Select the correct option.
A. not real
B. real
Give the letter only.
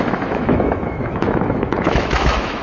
A